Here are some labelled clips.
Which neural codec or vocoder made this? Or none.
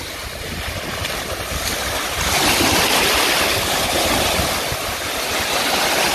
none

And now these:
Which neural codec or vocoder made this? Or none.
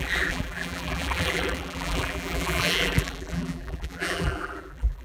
vocoder, BigVGAN v2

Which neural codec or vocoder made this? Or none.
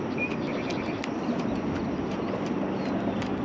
none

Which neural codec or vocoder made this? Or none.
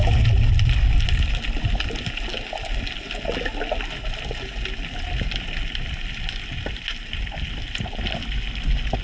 none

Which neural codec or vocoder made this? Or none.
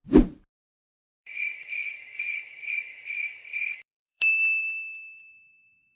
vocoder, BigVGAN v2